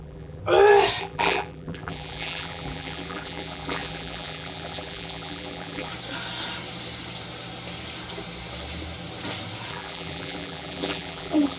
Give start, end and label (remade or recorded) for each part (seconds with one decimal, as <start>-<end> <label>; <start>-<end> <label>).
0.0-0.4 remade; 0.4-1.0 recorded; 1.0-5.9 remade; 5.9-9.7 recorded; 9.7-11.6 remade